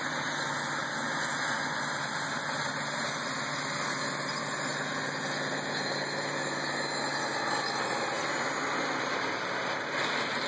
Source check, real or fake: real